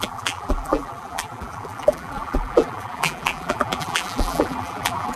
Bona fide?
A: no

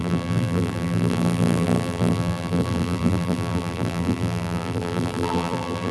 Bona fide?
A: no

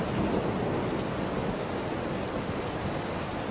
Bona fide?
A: yes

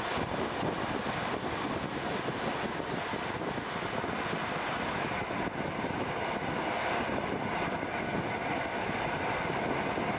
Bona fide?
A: yes